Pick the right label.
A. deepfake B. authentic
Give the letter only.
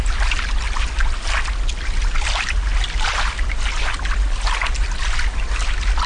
B